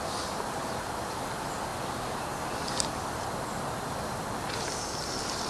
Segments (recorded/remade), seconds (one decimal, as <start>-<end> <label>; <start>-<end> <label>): 0.0-5.5 recorded